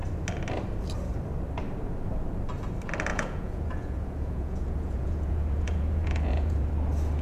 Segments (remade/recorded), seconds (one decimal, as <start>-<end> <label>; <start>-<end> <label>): 0.0-3.1 recorded; 3.1-6.7 remade; 6.7-7.2 recorded

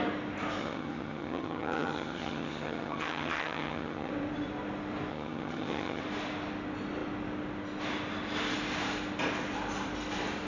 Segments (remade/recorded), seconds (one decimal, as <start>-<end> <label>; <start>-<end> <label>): 0.0-0.6 recorded; 0.6-4.1 remade; 4.1-5.1 recorded; 5.1-6.0 remade; 6.0-10.5 recorded

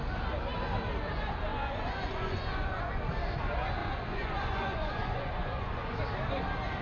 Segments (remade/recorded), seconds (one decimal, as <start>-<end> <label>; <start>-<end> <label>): 0.0-1.5 recorded; 1.5-3.0 remade; 3.0-3.8 recorded; 3.8-6.0 remade; 6.0-6.8 recorded

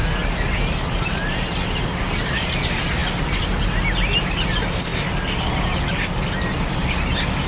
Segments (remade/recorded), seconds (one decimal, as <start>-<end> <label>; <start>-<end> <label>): 0.0-7.5 recorded

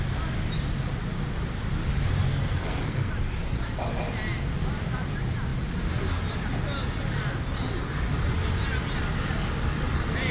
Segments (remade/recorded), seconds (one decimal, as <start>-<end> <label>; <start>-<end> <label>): 0.0-2.3 recorded; 2.3-3.1 remade; 3.1-10.3 recorded